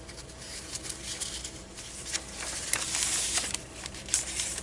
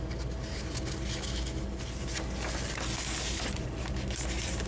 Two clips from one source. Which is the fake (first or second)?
first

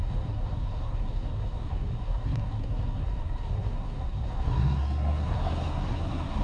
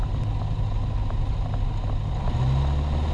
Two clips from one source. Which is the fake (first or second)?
first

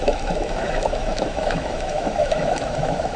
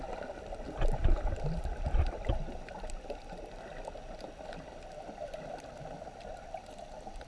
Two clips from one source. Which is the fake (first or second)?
first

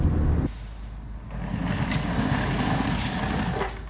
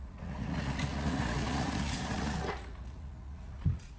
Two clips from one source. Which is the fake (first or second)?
second